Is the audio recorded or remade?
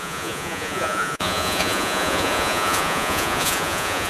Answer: remade